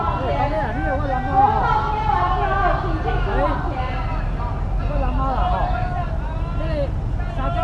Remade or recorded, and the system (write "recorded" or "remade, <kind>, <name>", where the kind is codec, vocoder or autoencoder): recorded